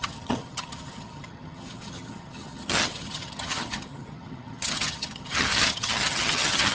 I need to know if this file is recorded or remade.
remade